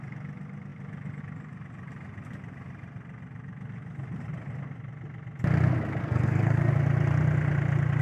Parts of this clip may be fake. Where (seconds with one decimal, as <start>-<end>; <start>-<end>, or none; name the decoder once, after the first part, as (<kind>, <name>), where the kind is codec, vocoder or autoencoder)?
6.0-6.7 (codec, SNAC)